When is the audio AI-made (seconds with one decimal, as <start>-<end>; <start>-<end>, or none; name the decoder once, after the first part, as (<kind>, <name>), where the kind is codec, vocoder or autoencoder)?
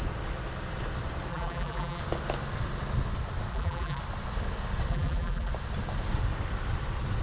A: 1.3-2.0 (vocoder, BigVGAN v2); 3.5-4.0; 4.9-5.5